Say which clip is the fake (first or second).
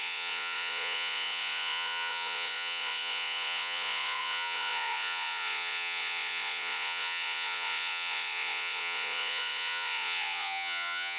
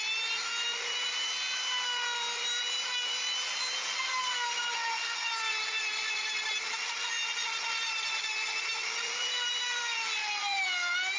first